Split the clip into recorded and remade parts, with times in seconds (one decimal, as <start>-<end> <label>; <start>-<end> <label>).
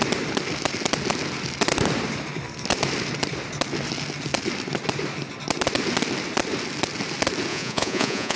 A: 0.0-7.5 recorded; 7.5-8.4 remade